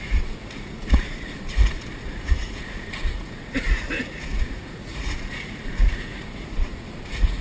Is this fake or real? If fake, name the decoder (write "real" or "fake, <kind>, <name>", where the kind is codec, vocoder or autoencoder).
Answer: fake, vocoder, Vocos